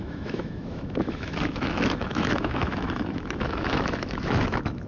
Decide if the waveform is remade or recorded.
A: remade